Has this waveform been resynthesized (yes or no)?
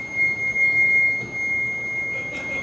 no